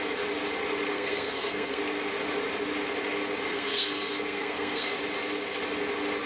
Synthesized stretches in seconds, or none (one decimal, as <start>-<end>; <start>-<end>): 0.9-1.8; 3.5-5.0